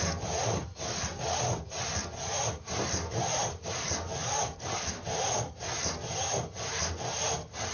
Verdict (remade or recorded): recorded